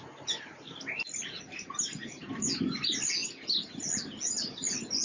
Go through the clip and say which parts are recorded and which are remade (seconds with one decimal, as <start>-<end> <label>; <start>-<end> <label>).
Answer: 0.0-5.0 recorded